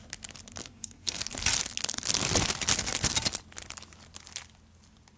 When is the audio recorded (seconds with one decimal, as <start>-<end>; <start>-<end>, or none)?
0.0-0.6; 1.2-5.2